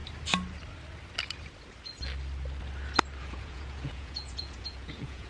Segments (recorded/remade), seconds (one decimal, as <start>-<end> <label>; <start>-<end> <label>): 0.0-3.2 recorded; 3.2-5.3 remade